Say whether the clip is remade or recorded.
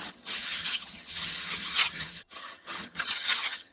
remade